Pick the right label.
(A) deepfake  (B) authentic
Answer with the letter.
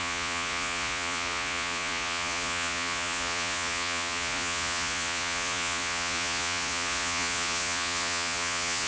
A